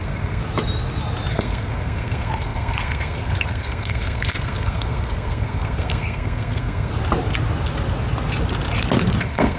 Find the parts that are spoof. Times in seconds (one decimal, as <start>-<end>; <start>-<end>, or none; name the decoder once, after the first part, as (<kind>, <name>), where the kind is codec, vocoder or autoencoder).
0.0-0.4 (codec, SNAC); 1.3-6.9; 9.2-9.6